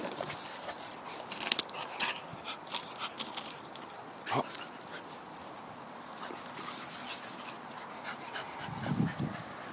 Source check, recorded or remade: recorded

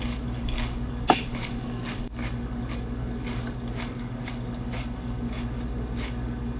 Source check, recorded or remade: remade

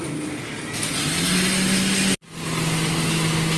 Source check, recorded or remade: recorded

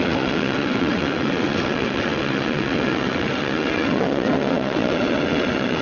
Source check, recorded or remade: remade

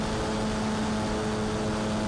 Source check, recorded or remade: recorded